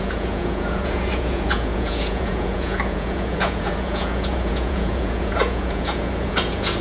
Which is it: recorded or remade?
remade